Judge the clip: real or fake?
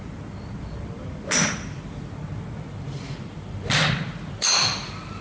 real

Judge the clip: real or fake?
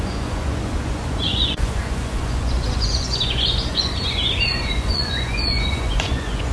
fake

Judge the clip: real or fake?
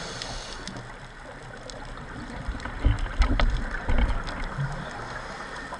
real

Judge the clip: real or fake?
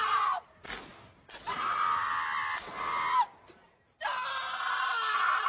real